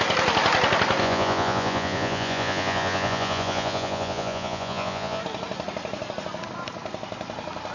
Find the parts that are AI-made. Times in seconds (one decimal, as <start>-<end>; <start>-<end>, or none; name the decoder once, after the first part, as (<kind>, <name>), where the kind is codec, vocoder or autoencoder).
1.0-5.2 (vocoder, Vocos)